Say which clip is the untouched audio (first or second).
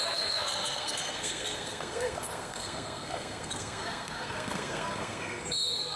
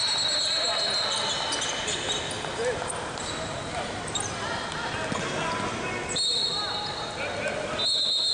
second